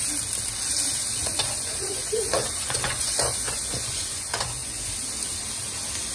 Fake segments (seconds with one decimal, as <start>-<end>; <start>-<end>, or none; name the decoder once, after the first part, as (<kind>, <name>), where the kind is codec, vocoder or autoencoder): 1.2-4.9 (vocoder, Vocos)